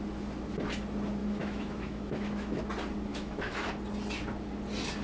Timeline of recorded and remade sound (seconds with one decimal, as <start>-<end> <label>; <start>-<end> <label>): 0.0-1.2 recorded; 1.2-2.6 remade; 2.6-3.1 recorded; 3.1-3.7 remade; 3.7-5.0 recorded